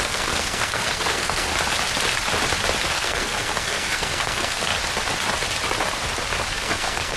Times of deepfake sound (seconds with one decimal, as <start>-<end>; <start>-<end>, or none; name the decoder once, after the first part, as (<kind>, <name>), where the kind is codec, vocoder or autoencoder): 0.0-1.5 (codec, SNAC); 2.8-4.7; 6.5-7.2